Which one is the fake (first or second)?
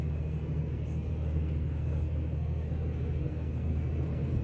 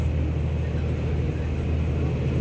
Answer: first